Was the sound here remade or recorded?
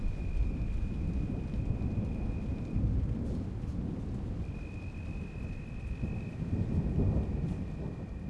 remade